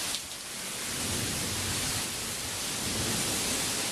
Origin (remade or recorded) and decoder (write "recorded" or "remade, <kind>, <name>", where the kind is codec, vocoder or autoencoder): recorded